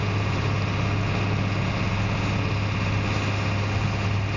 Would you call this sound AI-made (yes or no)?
no